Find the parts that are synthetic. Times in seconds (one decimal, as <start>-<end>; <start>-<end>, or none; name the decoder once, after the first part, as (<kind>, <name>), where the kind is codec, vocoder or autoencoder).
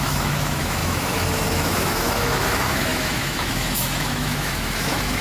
0.0-5.2 (autoencoder, DAC-VAE)